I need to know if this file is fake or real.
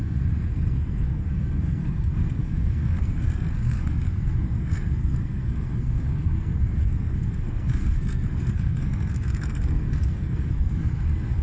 fake